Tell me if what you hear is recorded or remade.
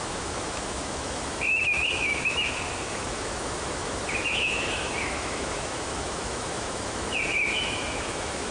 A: remade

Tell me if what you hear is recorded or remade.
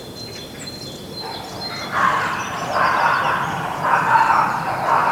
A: recorded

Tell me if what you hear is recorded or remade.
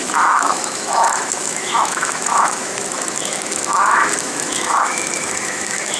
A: remade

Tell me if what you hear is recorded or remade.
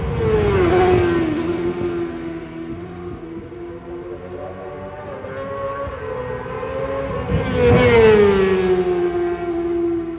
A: recorded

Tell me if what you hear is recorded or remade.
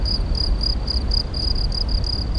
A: recorded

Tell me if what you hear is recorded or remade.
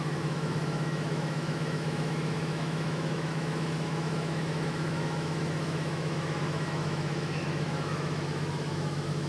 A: remade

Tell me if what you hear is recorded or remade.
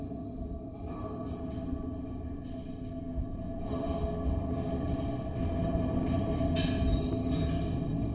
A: recorded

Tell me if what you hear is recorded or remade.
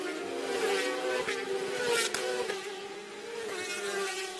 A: recorded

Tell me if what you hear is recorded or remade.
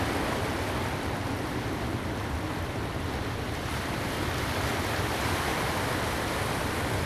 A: recorded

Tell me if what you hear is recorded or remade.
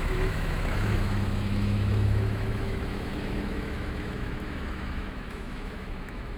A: remade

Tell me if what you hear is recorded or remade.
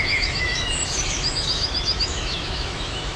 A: remade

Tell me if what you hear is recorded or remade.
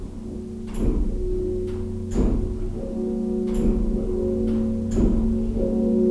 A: recorded